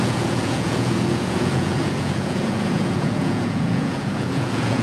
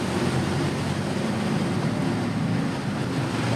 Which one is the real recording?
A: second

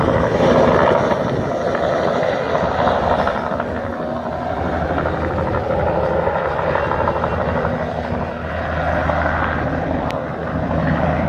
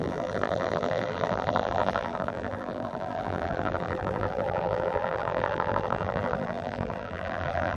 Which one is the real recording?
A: first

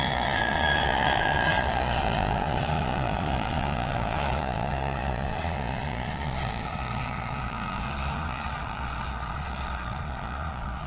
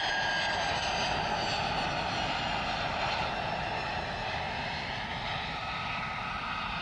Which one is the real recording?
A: second